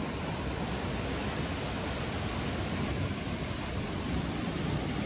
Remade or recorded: recorded